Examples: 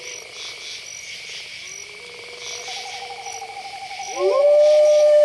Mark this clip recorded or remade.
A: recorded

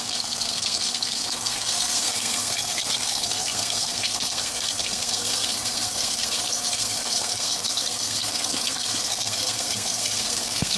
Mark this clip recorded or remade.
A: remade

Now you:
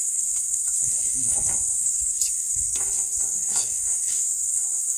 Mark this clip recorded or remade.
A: remade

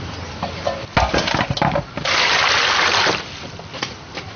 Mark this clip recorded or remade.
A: recorded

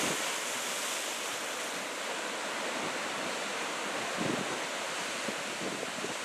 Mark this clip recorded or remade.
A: recorded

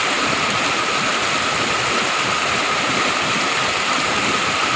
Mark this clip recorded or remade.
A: recorded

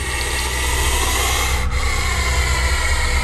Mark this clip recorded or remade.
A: recorded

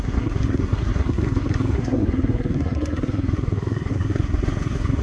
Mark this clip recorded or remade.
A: remade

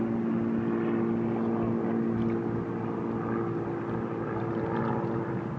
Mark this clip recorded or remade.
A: recorded